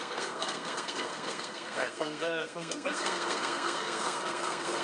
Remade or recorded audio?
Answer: remade